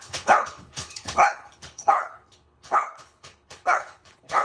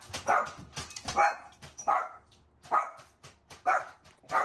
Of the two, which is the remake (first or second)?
first